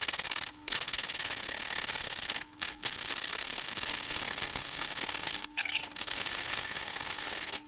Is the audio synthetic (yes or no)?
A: yes